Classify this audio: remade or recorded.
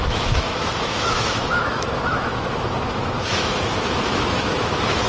remade